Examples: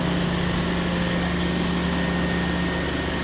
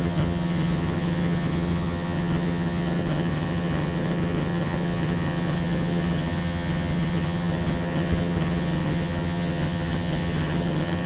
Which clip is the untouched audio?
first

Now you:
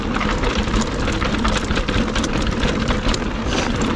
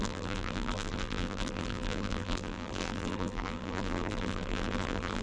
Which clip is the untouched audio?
first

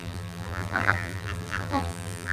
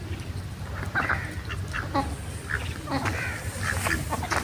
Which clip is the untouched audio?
second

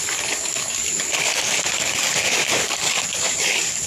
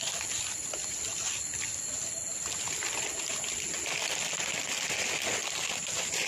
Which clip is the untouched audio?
second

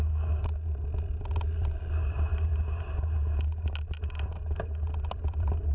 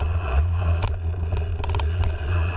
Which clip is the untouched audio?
first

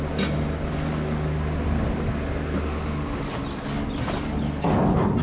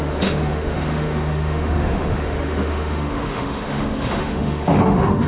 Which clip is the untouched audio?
first